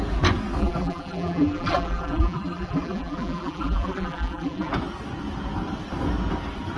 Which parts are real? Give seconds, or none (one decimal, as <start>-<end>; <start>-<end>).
0.0-0.6; 4.7-6.8